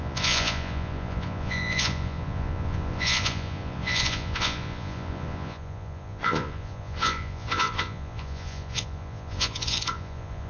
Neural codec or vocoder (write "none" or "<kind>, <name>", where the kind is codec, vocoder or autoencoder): vocoder, Vocos